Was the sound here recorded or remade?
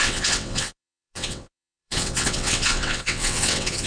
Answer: remade